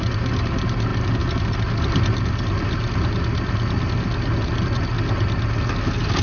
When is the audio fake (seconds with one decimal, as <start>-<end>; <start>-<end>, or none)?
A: none